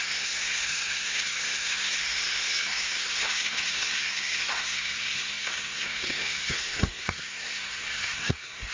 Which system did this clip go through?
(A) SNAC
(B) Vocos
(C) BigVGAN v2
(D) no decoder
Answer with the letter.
A